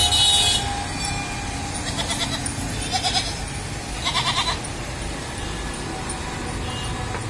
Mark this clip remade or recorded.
recorded